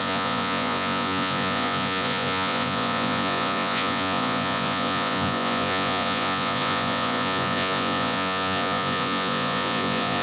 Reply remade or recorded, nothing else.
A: remade